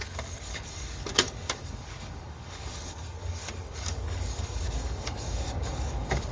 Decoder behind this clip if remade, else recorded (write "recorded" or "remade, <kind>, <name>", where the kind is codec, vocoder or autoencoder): remade, codec, DAC